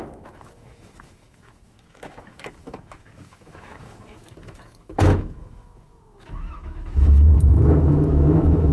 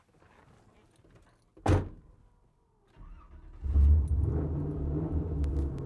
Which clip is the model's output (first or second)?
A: first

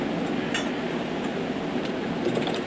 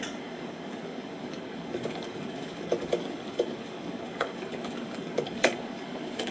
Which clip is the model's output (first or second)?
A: second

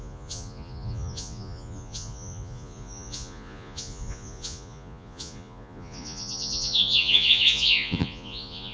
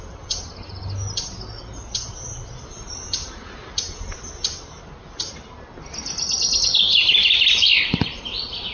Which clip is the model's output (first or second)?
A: first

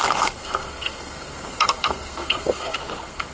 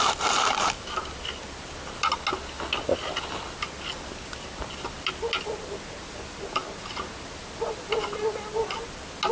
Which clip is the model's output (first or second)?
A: first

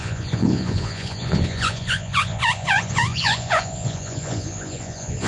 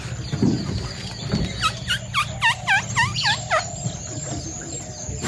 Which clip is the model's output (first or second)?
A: first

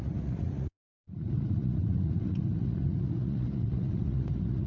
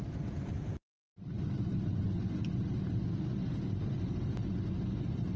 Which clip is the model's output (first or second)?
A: first